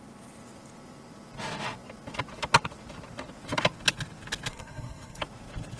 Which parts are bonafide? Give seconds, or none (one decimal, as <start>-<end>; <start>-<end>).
0.0-4.5; 5.2-5.8